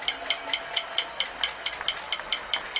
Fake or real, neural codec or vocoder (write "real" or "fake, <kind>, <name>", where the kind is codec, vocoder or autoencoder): real